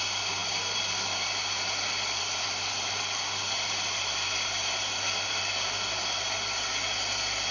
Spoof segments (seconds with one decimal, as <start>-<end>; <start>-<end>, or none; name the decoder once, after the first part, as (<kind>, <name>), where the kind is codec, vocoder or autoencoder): none

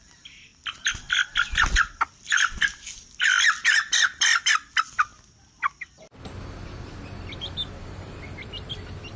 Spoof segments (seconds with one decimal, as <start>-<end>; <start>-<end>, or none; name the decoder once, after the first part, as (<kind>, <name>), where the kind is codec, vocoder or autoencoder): 0.0-5.1 (vocoder, BigVGAN v2); 5.9-9.2

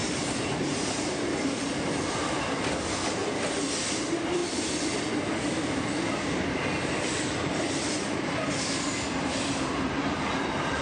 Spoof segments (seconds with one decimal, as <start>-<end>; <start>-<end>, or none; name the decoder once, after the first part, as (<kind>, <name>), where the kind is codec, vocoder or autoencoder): 0.0-1.6 (vocoder, BigVGAN v2)

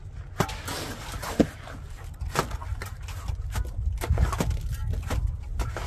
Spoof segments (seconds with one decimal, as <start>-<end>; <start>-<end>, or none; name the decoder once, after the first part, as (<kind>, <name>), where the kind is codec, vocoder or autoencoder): 2.7-3.3 (vocoder, BigVGAN v2); 4.8-5.3

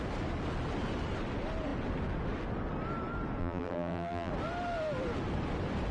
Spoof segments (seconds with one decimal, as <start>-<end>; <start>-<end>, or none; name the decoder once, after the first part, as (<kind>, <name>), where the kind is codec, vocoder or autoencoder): 3.4-4.3 (vocoder, BigVGAN v2)

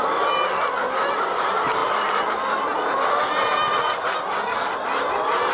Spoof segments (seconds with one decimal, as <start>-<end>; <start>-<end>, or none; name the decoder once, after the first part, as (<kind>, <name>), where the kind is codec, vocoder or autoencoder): none

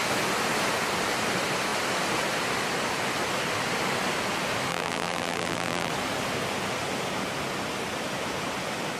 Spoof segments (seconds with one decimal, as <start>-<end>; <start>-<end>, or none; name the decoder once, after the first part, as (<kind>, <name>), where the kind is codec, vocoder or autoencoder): 4.7-5.9 (vocoder, BigVGAN v2)